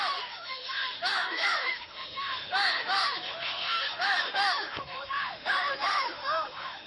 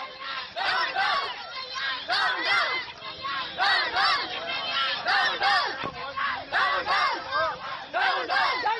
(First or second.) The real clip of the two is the second